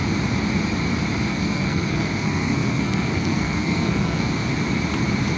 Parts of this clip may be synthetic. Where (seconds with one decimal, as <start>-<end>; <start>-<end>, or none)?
1.3-4.3